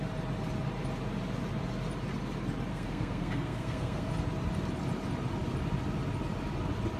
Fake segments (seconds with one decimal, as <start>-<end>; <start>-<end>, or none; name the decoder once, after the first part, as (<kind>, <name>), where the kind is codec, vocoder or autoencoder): 2.7-4.1 (codec, SNAC)